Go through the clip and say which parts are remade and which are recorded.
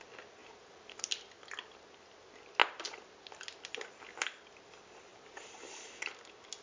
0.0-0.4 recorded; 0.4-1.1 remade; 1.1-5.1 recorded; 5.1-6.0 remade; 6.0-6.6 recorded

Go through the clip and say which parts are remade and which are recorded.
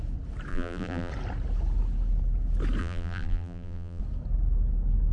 0.0-0.5 recorded; 0.5-1.1 remade; 1.1-2.8 recorded; 2.8-4.0 remade; 4.0-5.1 recorded